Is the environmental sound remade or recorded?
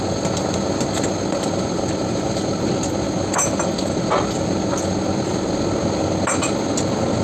recorded